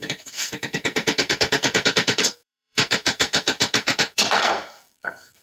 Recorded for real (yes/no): no